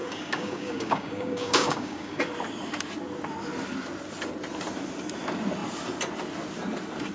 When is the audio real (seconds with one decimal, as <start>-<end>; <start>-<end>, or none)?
2.2-7.1